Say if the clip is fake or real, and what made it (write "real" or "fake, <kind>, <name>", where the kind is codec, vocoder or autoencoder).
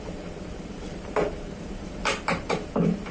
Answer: fake, vocoder, BigVGAN v2